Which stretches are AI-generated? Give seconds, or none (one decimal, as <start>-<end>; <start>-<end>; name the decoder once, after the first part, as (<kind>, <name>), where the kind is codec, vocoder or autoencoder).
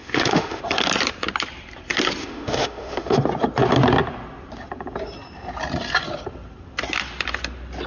0.0-0.6 (autoencoder, DAC-VAE); 2.2-3.2